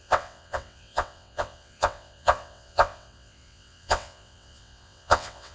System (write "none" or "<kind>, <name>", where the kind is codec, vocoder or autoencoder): vocoder, WaveNeXt